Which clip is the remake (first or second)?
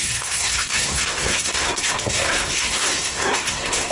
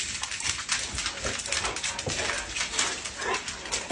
first